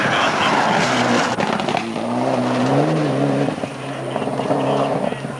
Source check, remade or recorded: recorded